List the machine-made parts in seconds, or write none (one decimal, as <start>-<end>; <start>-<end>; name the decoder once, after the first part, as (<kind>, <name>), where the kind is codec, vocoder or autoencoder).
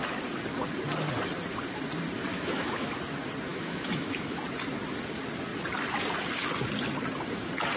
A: 2.3-2.9 (autoencoder, DAC-VAE); 3.5-4.4